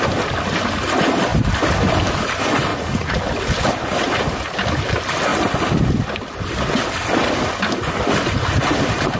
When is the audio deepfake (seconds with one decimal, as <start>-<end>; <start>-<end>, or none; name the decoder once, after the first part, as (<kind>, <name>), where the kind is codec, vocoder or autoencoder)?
2.7-3.2 (vocoder, Vocos)